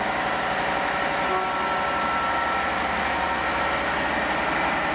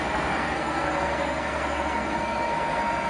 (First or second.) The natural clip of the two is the first